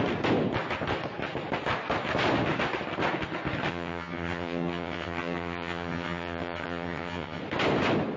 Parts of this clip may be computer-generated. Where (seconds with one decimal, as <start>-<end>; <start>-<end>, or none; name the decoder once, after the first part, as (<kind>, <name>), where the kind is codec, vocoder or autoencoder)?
3.7-7.4 (vocoder, HiFi-GAN)